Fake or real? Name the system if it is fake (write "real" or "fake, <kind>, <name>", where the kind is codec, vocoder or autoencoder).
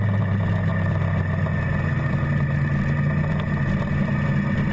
real